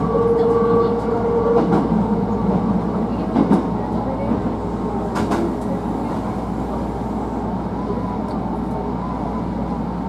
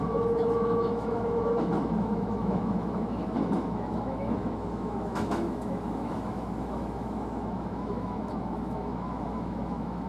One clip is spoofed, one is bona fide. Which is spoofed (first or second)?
second